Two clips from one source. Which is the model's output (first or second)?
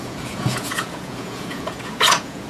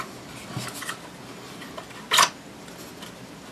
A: first